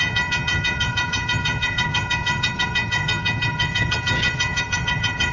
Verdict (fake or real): fake